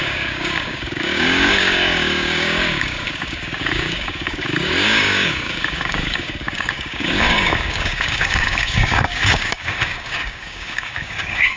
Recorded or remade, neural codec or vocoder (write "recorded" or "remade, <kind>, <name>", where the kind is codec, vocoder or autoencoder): remade, codec, DAC